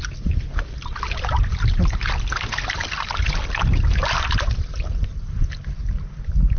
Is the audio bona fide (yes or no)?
yes